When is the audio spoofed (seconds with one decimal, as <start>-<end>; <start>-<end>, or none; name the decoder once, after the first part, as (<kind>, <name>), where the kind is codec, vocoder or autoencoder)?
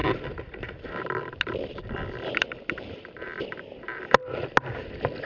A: none